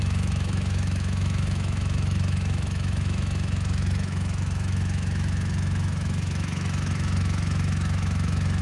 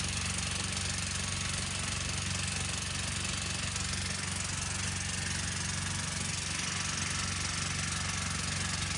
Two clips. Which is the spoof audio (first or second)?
first